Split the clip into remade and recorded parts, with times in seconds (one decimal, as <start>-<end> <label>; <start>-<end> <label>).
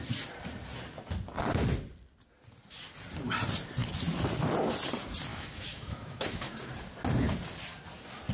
0.0-5.3 recorded; 5.3-6.5 remade; 6.5-8.3 recorded